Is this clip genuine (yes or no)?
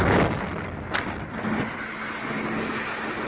yes